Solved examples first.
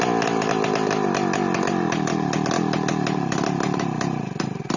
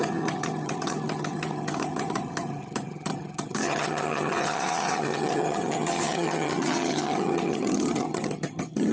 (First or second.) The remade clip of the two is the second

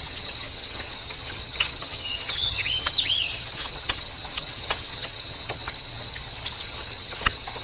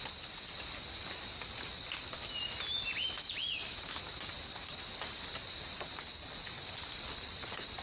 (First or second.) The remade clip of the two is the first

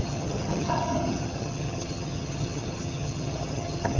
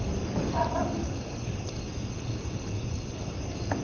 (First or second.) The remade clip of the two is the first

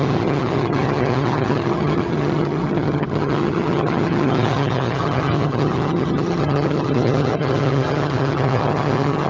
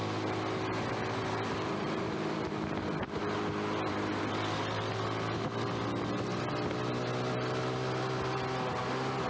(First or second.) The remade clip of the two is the first